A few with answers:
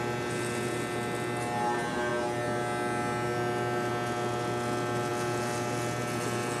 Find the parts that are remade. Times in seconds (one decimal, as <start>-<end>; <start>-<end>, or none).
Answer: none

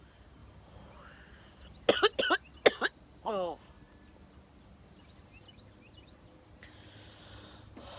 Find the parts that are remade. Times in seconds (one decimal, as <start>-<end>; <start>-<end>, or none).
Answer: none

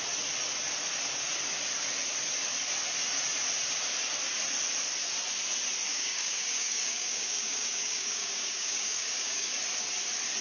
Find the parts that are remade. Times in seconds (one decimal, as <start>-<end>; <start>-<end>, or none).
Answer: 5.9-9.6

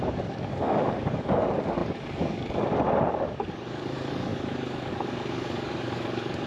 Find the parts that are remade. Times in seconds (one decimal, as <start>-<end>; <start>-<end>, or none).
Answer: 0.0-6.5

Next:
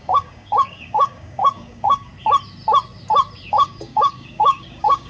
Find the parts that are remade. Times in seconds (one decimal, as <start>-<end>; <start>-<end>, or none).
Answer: 0.0-2.1; 3.5-5.1